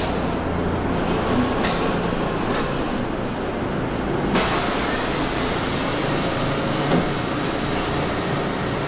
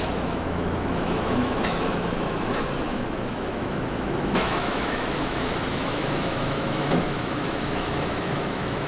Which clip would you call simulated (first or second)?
second